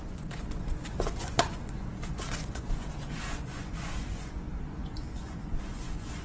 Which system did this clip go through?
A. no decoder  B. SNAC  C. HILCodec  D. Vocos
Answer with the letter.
D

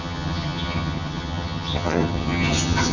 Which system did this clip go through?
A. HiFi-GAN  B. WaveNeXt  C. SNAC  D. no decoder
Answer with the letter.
A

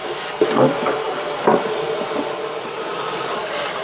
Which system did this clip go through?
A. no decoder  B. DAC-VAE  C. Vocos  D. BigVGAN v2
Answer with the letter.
A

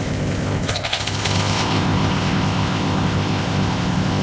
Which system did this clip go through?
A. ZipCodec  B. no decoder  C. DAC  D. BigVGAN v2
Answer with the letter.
A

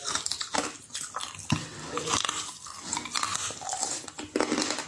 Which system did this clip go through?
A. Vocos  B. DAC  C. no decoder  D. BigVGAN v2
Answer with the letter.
D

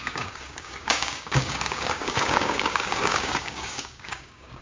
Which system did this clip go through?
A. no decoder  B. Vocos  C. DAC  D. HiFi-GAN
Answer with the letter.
C